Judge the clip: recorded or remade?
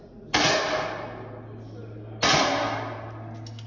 recorded